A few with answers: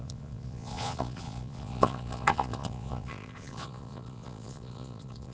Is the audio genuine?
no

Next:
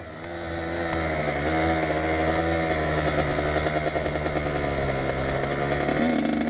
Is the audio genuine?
yes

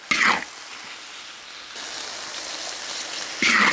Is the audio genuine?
yes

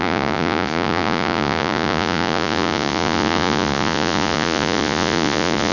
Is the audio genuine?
no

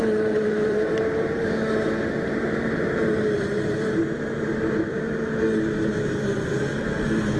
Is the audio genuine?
no